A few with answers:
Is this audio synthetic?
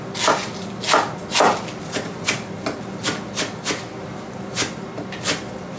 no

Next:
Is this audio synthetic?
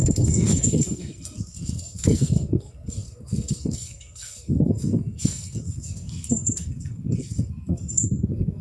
yes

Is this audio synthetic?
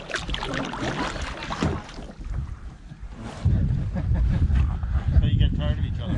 no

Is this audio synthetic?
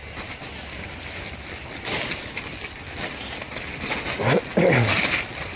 no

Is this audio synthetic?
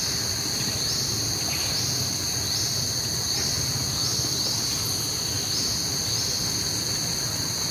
no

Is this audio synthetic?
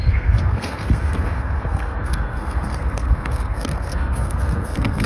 yes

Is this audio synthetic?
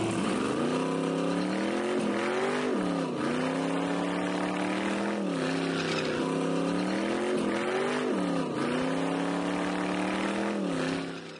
no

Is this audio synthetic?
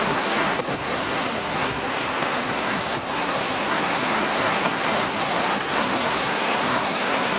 yes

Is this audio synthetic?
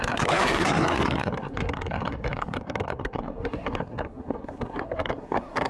yes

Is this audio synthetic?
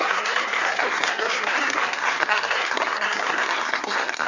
yes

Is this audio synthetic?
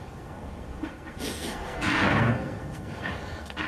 yes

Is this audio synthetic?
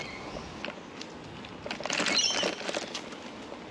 no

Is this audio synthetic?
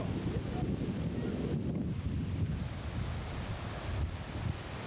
no